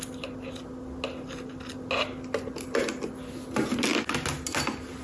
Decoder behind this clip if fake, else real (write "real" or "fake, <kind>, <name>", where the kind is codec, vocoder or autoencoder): real